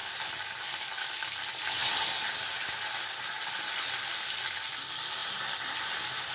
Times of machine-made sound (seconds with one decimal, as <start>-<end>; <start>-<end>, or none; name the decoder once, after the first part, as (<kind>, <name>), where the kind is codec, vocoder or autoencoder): none